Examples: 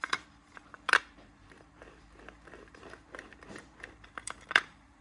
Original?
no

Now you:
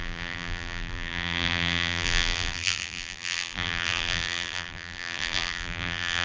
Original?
no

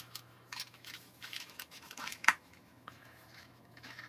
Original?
no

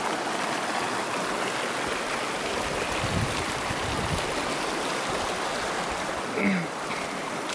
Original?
yes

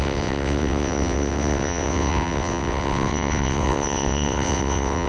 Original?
no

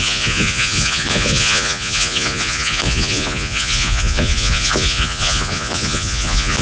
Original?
no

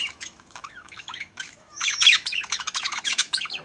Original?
no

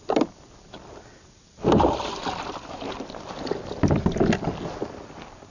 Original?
yes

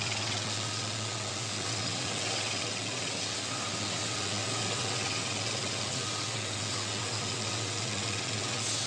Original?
no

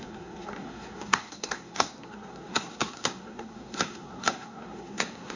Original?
no